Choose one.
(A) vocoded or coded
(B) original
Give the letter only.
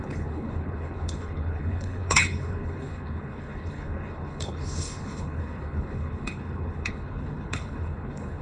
A